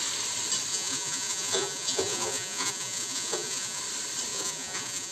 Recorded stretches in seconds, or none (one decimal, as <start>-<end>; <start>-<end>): 0.0-0.7; 3.8-4.3